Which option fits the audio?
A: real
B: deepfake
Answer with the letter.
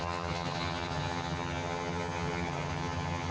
B